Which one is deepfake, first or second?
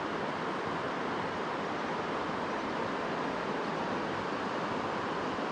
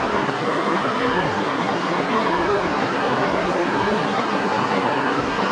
second